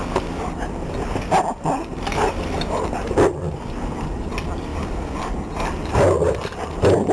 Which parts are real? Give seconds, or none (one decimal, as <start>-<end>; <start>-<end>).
0.0-7.1